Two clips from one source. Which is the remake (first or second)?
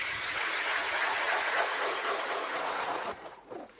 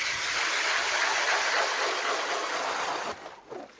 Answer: first